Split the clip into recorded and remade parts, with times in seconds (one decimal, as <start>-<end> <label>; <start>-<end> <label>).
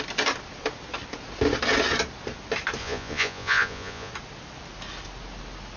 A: 0.0-2.8 recorded; 2.8-4.1 remade; 4.1-5.8 recorded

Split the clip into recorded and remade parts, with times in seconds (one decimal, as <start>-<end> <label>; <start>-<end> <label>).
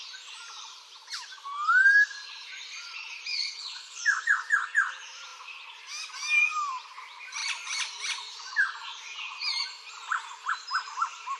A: 0.0-3.3 recorded; 3.3-4.0 remade; 4.0-11.4 recorded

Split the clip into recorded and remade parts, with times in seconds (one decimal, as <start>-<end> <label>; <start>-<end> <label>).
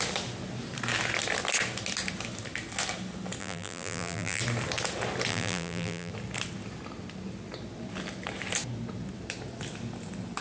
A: 0.0-3.4 recorded; 3.4-4.4 remade; 4.4-5.3 recorded; 5.3-6.1 remade; 6.1-10.4 recorded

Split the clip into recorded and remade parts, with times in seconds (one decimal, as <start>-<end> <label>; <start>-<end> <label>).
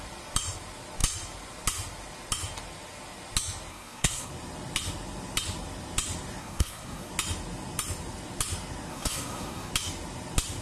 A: 0.0-3.7 recorded; 3.7-4.3 remade; 4.3-6.4 recorded; 6.4-7.1 remade; 7.1-8.9 recorded; 8.9-9.7 remade; 9.7-10.6 recorded